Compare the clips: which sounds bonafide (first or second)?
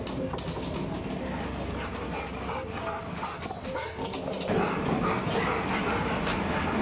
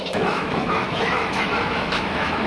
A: first